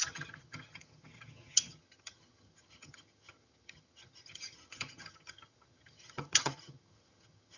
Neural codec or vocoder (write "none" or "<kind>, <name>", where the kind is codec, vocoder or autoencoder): vocoder, HiFi-GAN